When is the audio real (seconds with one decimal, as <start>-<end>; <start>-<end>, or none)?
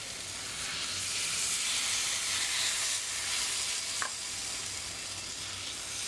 0.0-6.1